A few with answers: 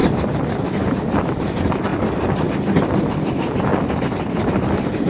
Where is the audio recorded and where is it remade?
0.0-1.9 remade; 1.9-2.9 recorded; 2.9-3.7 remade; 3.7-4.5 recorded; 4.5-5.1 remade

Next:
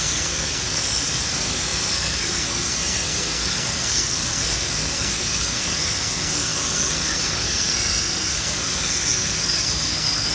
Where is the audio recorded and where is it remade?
0.0-10.3 remade

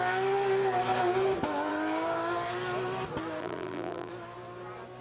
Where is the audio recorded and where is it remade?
0.0-3.4 recorded; 3.4-4.1 remade; 4.1-5.0 recorded

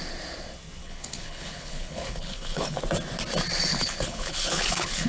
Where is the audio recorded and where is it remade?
0.0-0.8 recorded; 0.8-2.8 remade; 2.8-3.7 recorded; 3.7-5.1 remade

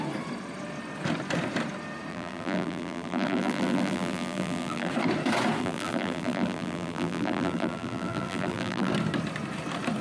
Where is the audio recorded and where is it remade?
0.0-2.1 recorded; 2.1-4.9 remade; 4.9-5.6 recorded; 5.6-8.9 remade; 8.9-10.0 recorded

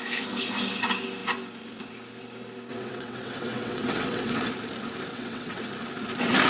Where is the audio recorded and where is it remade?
0.0-2.7 recorded; 2.7-4.5 remade; 4.5-5.1 recorded; 5.1-5.6 remade; 5.6-6.5 recorded

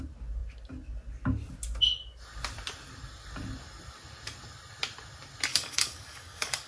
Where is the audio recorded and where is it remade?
0.0-5.5 recorded; 5.5-6.7 remade